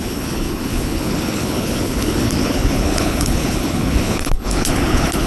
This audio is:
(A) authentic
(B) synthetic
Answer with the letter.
B